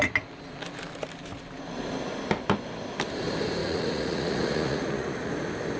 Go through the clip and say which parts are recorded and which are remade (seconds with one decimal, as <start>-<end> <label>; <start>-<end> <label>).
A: 0.0-3.6 recorded; 3.6-5.3 remade; 5.3-5.8 recorded